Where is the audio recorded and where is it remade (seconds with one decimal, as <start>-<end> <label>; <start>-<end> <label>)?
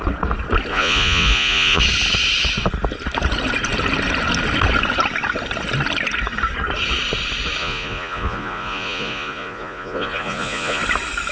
0.0-0.7 recorded; 0.7-1.8 remade; 1.8-7.6 recorded; 7.6-10.8 remade; 10.8-11.3 recorded